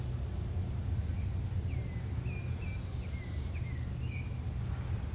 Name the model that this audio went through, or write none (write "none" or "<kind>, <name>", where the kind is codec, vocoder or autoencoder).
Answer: none